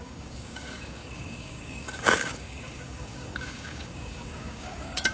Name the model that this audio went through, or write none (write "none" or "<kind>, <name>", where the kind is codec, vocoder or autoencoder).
codec, DAC